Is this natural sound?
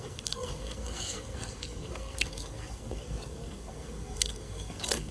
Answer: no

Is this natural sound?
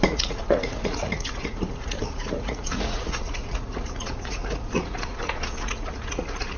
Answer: no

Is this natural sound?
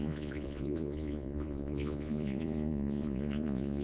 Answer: no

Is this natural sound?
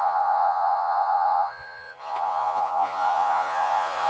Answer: no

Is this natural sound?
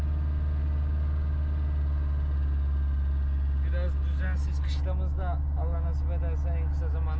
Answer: yes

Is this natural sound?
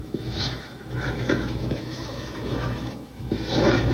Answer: no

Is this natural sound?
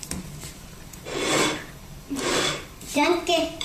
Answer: no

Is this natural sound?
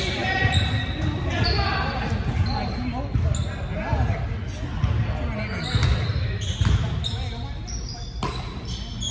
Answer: yes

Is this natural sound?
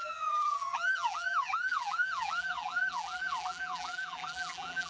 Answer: no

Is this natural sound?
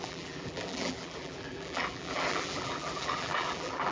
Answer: no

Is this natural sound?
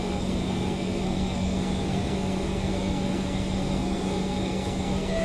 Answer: no